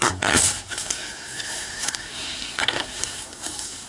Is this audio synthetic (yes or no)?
yes